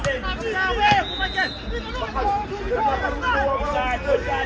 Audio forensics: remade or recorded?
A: recorded